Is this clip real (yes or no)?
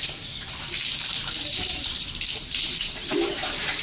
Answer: no